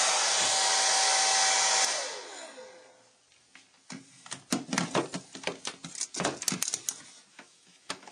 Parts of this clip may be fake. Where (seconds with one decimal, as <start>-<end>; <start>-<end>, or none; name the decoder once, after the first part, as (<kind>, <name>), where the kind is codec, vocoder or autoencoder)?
7.3-8.1 (autoencoder, DAC-VAE)